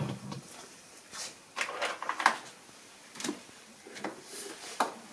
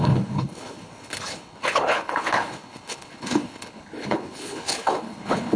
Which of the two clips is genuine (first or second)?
first